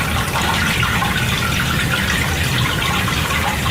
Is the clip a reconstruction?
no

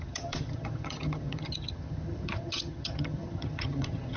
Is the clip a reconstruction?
yes